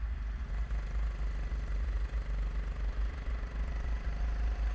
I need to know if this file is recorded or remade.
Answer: recorded